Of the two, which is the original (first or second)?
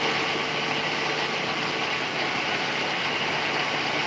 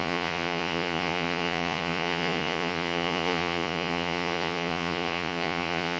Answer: first